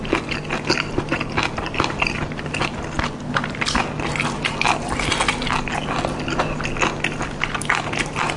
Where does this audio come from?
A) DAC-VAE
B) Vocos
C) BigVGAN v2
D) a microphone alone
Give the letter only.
D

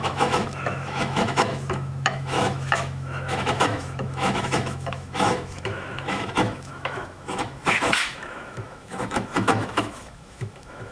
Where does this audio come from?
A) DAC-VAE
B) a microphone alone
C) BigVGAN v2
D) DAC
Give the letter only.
A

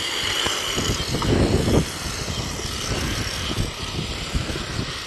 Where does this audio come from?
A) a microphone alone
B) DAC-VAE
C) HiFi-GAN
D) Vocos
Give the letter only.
A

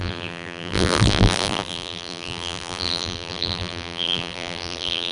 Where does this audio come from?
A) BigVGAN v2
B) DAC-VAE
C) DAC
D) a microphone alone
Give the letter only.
A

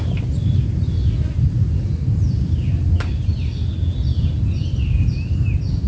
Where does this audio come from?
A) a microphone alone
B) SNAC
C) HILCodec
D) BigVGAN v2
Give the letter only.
A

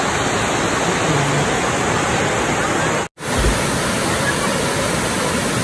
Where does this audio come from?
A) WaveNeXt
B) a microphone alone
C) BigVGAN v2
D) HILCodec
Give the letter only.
B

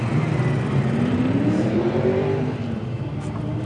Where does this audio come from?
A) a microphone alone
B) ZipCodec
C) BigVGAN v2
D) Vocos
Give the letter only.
A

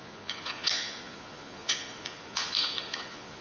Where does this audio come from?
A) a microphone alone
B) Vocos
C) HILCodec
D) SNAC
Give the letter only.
B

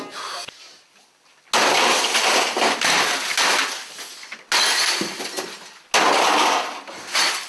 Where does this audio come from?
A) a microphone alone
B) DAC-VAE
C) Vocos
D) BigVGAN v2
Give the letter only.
A